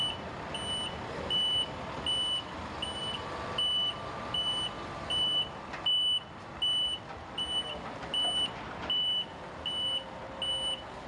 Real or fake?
real